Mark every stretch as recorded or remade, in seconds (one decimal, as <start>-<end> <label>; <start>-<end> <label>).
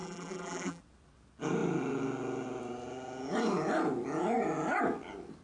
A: 0.0-0.8 remade; 0.8-5.4 recorded